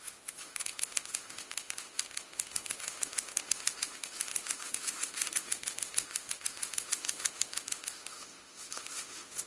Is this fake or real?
fake